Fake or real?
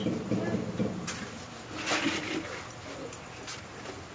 real